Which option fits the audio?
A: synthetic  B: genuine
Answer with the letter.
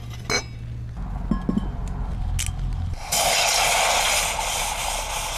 B